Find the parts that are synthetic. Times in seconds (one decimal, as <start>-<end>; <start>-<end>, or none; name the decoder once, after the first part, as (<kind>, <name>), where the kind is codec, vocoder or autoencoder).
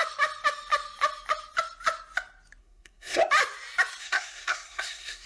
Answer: 2.6-3.2 (codec, SNAC); 4.0-5.3